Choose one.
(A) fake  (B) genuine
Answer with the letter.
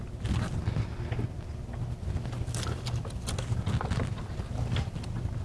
B